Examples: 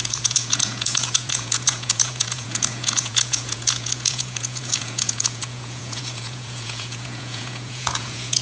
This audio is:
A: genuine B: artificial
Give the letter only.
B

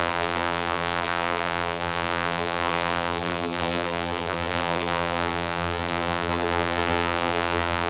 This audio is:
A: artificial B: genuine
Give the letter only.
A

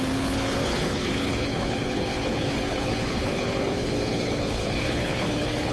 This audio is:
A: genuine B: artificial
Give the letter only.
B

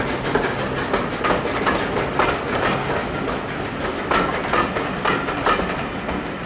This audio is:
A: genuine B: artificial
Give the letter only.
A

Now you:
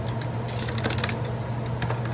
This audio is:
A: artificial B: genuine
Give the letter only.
B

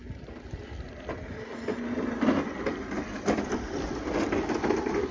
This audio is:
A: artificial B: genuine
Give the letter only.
B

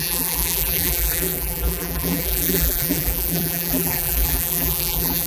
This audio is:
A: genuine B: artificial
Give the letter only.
B